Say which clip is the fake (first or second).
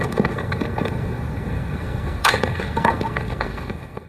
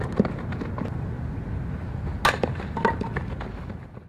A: first